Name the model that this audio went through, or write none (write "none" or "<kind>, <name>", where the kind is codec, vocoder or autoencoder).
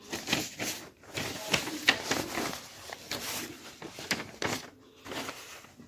none